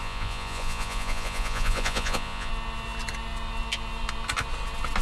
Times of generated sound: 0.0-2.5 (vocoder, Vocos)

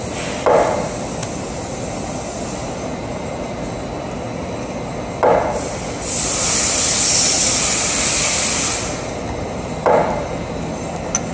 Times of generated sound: none

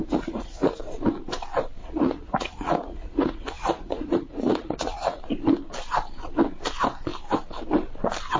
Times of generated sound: 0.0-0.8 (vocoder, Vocos); 1.8-5.2